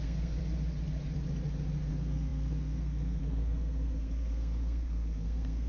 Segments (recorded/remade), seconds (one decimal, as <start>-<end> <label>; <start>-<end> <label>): 0.0-0.4 remade; 0.4-1.9 recorded; 1.9-5.7 remade